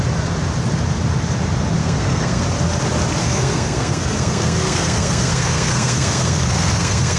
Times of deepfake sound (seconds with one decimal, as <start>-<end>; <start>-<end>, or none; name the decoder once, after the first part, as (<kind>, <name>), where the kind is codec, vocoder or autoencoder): 1.8-2.4 (codec, SNAC); 3.2-7.2